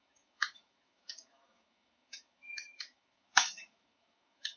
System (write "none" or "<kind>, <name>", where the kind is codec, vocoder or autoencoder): autoencoder, DAC-VAE